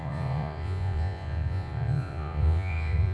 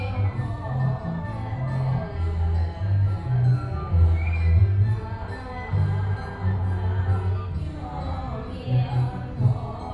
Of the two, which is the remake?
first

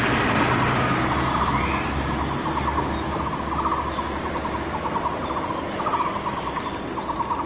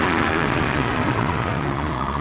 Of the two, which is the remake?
second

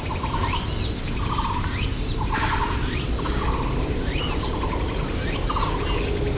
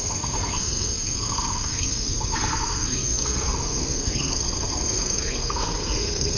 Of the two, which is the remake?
second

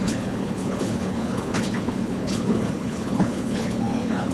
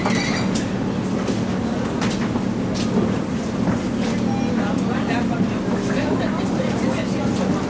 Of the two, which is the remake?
first